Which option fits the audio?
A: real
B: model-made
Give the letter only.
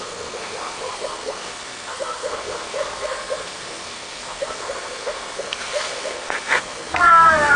B